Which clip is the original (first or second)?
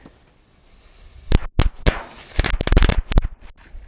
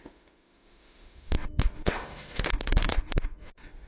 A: first